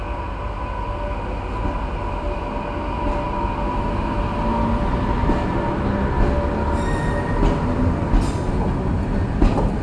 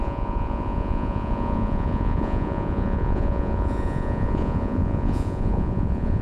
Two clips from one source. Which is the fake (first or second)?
second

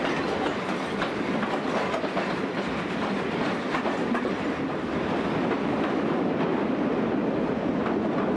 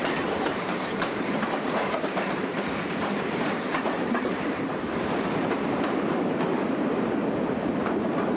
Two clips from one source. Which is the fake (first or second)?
second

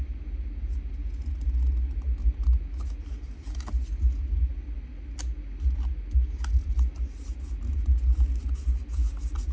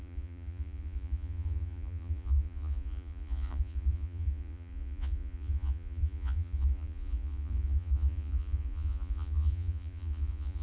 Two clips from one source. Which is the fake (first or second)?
second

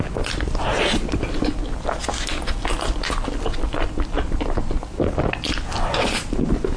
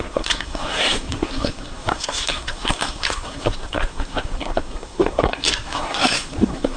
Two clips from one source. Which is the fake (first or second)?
second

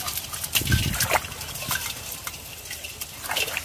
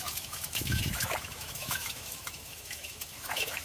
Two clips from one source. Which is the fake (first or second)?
second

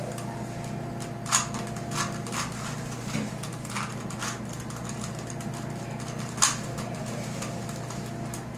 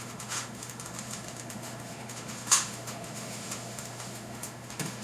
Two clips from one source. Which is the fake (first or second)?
second